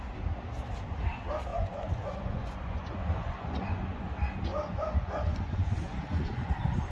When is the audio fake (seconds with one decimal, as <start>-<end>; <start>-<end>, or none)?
1.5-4.0; 4.5-6.5